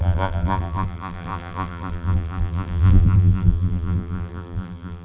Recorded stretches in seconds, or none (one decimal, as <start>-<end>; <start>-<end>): none